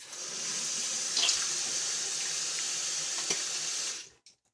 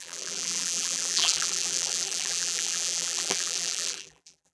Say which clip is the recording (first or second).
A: first